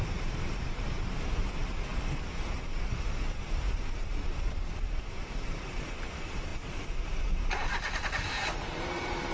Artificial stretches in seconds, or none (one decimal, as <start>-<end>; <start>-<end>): 0.0-6.5; 8.3-9.3